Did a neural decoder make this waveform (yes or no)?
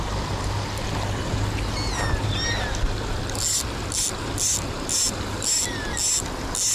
no